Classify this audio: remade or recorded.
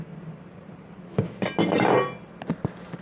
recorded